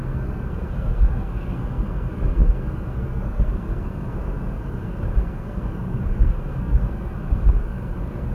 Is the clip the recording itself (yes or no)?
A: no